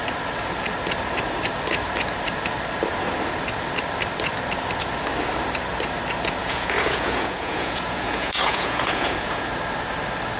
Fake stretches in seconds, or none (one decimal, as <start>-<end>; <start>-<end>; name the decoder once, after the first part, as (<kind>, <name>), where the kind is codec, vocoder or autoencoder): 6.4-9.4 (vocoder, Vocos)